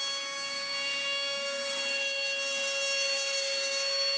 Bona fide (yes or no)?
no